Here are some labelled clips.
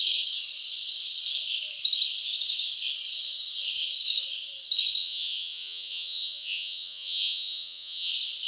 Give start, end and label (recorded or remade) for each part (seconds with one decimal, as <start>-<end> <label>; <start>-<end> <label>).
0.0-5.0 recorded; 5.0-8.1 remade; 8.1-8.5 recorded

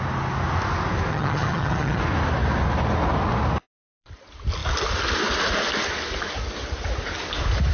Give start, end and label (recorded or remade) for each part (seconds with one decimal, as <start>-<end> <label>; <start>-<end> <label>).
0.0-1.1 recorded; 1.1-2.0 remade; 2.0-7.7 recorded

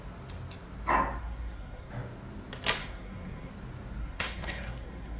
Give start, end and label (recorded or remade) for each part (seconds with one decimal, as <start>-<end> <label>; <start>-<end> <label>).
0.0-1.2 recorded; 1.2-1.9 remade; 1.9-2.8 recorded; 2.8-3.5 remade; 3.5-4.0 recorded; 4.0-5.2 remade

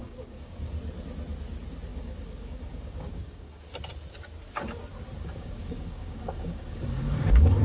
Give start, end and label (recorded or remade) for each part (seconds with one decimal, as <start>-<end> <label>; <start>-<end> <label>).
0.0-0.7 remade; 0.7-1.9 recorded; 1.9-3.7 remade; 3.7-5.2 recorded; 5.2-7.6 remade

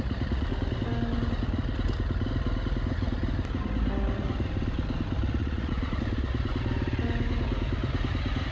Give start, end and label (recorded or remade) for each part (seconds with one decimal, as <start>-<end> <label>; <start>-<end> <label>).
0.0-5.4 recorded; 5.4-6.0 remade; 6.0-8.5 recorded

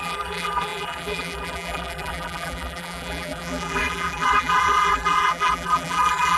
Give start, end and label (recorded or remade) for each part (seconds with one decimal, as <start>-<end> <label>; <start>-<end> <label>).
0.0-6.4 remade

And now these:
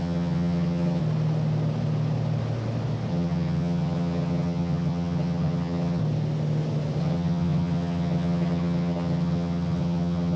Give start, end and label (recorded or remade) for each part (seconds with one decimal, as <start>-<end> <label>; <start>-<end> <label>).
0.0-1.0 remade; 1.0-3.1 recorded; 3.1-6.0 remade; 6.0-7.0 recorded; 7.0-10.4 remade